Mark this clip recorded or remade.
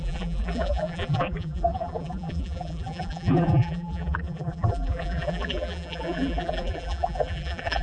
remade